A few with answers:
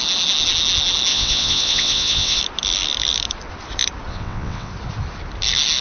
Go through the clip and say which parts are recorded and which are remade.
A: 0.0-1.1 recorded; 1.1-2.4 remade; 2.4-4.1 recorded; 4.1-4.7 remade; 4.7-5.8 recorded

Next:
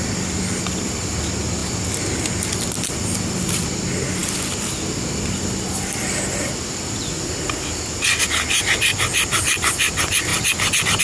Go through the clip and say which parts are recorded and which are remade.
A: 0.0-11.0 recorded

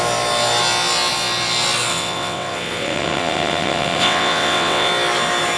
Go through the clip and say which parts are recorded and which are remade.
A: 0.0-1.9 recorded; 1.9-4.9 remade; 4.9-5.6 recorded

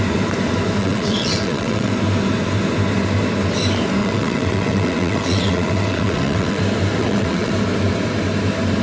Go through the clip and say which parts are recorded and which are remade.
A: 0.0-0.8 recorded; 0.8-1.9 remade; 1.9-4.0 recorded; 4.0-6.6 remade; 6.6-7.0 recorded; 7.0-7.5 remade; 7.5-8.8 recorded

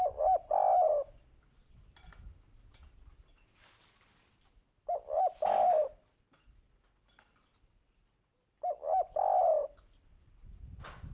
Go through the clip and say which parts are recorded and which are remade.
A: 0.0-11.1 recorded

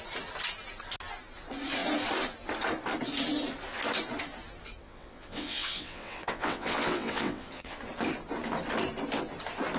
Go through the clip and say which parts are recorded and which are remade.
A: 0.0-4.8 recorded; 4.8-7.8 remade; 7.8-9.8 recorded

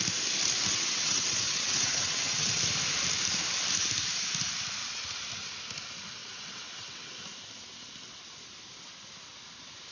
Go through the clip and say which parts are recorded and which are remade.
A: 0.0-0.7 recorded; 0.7-2.5 remade; 2.5-6.2 recorded; 6.2-7.2 remade; 7.2-9.9 recorded

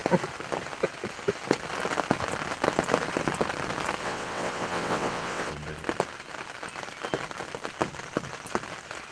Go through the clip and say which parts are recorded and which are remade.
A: 0.0-4.0 recorded; 4.0-5.5 remade; 5.5-9.1 recorded